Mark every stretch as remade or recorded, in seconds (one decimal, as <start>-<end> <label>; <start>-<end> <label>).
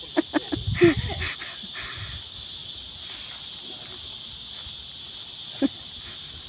0.0-6.5 recorded